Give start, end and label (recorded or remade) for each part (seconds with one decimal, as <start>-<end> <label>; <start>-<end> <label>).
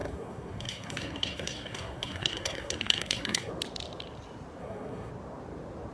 0.0-3.5 remade; 3.5-4.6 recorded; 4.6-5.1 remade; 5.1-5.9 recorded